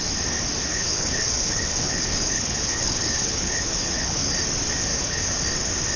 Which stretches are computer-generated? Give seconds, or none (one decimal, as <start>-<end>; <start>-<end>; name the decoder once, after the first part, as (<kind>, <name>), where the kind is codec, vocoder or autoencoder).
0.7-4.3 (codec, HILCodec); 4.9-5.4